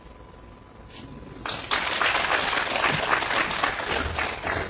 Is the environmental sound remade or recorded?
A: recorded